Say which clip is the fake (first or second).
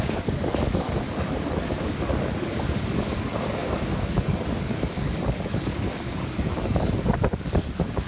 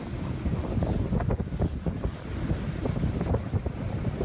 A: first